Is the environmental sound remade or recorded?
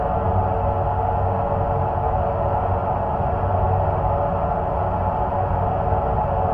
recorded